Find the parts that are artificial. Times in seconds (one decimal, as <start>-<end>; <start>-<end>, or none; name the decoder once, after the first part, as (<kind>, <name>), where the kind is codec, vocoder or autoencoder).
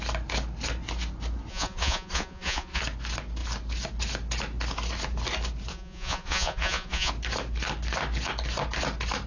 1.5-2.8 (vocoder, Vocos); 5.7-7.1